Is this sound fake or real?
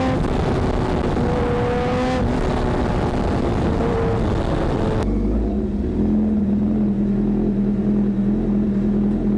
real